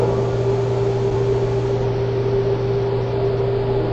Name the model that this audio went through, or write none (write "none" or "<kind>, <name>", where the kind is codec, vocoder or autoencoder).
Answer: none